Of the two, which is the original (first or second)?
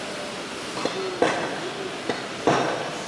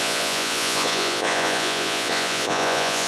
first